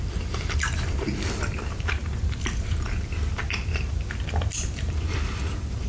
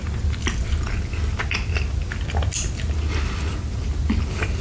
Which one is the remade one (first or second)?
first